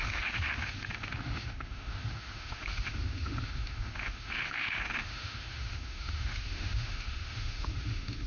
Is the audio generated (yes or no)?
yes